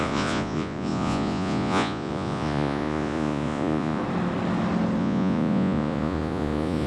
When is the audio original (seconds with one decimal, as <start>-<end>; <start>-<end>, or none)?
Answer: 4.0-5.0